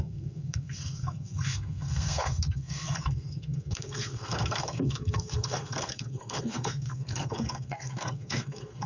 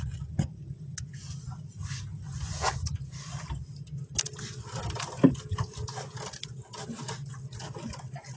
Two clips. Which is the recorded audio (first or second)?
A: second